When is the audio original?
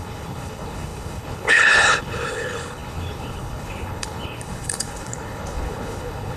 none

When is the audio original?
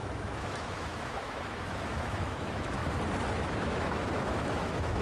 2.8-3.3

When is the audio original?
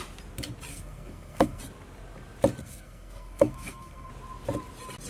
0.0-0.7; 1.6-2.6; 4.1-5.1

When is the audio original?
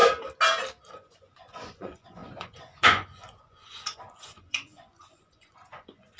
0.0-0.9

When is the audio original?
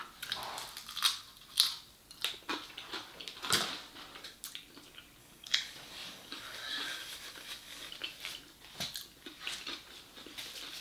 0.0-5.2; 7.9-10.8